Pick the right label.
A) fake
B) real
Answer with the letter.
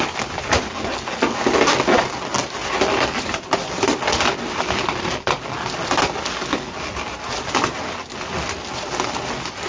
B